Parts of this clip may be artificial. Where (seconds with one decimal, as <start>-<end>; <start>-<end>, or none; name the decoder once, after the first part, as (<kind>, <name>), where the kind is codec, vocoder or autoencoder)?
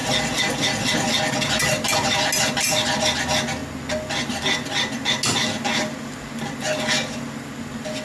none